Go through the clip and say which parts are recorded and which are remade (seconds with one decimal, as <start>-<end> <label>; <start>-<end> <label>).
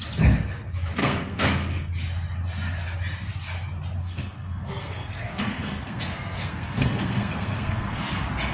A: 0.0-1.0 recorded; 1.0-1.9 remade; 1.9-4.0 recorded; 4.0-8.0 remade; 8.0-8.5 recorded